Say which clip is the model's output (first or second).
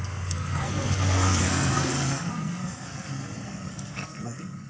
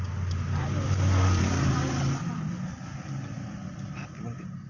first